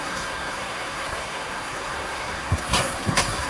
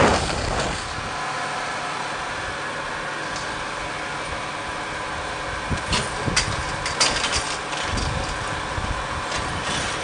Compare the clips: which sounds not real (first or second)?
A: first